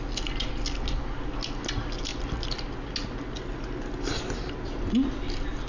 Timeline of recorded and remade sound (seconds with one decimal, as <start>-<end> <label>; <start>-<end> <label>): 0.0-5.7 recorded